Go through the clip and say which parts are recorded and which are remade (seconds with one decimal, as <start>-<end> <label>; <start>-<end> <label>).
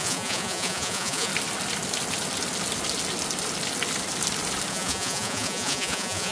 0.0-1.3 remade; 1.3-4.7 recorded; 4.7-6.3 remade